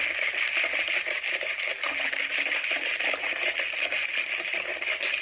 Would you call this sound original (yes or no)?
yes